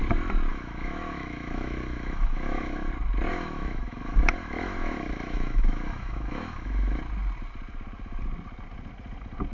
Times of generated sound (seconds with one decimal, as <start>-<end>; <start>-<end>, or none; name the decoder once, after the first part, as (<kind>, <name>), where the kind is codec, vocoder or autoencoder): 0.5-2.9 (autoencoder, DAC-VAE); 3.3-7.0